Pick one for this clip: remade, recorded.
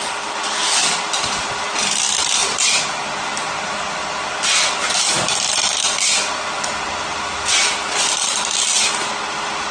recorded